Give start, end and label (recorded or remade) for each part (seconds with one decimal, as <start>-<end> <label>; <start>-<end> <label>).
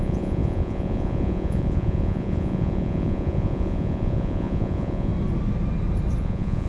0.0-5.1 remade; 5.1-6.2 recorded; 6.2-6.7 remade